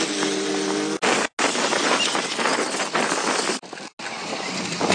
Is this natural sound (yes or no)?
yes